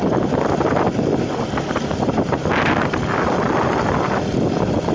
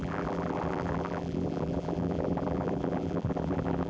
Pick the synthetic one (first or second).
second